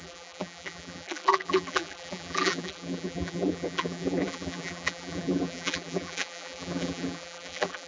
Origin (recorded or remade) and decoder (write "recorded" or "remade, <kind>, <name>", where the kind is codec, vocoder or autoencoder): remade, vocoder, BigVGAN v2